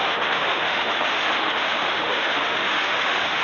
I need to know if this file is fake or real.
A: fake